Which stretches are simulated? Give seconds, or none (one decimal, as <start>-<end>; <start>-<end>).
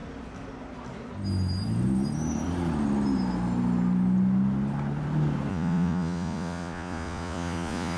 5.5-8.0